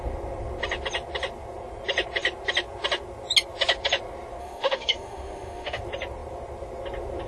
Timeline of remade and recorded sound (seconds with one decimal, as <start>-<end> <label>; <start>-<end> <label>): 0.0-4.4 recorded; 4.4-5.8 remade; 5.8-7.3 recorded